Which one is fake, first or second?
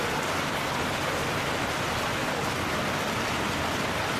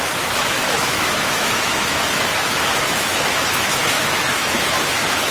second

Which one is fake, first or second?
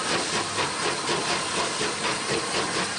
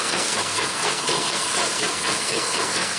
second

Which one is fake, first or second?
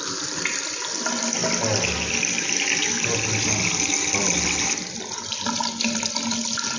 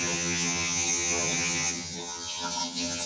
second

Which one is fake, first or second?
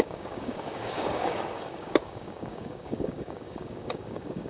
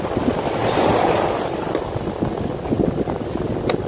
first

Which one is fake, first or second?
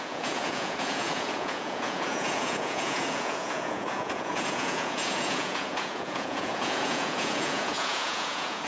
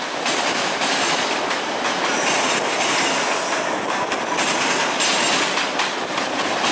first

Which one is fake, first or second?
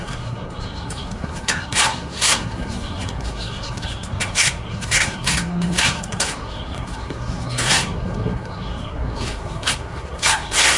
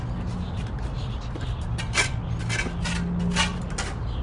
first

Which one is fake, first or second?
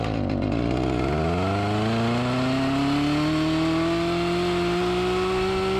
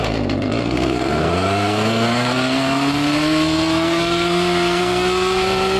second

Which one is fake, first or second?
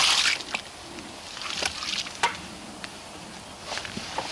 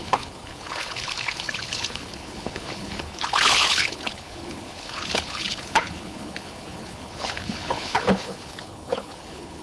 second